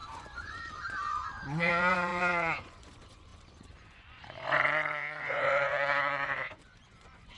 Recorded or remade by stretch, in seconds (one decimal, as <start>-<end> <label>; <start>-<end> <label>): 0.0-7.4 remade